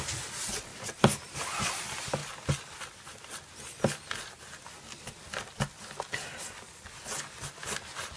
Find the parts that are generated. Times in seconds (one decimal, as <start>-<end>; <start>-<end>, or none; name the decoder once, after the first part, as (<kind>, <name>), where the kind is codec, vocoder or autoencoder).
none